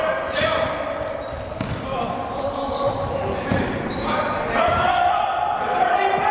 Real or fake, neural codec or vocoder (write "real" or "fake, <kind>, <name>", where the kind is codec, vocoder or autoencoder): fake, vocoder, BigVGAN v2